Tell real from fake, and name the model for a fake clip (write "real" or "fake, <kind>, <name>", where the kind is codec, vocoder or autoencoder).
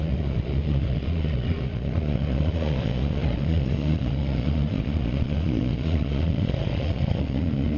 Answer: fake, vocoder, Vocos